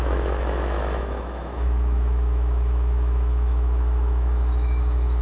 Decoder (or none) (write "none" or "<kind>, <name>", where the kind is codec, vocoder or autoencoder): autoencoder, DAC-VAE